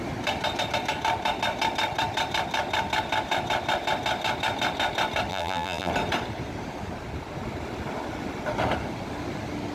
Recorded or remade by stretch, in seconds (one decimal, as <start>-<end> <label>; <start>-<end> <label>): 0.0-5.3 recorded; 5.3-5.9 remade; 5.9-9.7 recorded